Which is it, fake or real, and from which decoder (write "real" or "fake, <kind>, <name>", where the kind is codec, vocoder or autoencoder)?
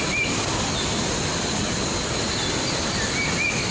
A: real